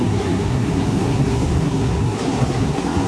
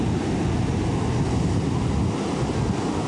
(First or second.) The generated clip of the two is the first